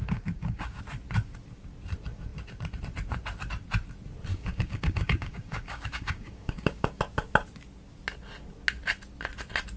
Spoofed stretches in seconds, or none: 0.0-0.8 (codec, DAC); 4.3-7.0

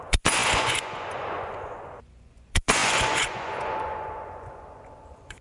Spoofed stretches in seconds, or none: 0.0-5.4 (vocoder, Vocos)

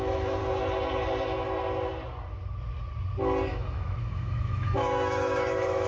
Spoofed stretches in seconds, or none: 0.0-0.4 (autoencoder, DAC-VAE); 3.5-5.9

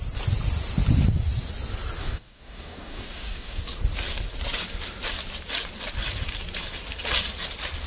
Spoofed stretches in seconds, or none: 2.0-3.6 (codec, DAC)

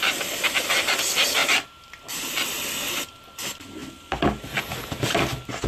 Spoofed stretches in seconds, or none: none

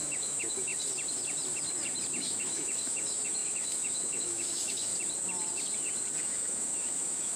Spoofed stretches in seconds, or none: 0.0-0.7 (autoencoder, DAC-VAE); 2.2-4.9; 6.2-7.4

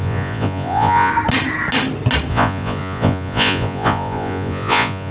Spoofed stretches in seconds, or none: 0.0-1.1 (vocoder, Vocos); 2.3-5.1